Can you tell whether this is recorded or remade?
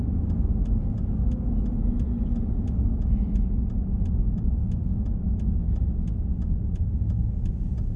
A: recorded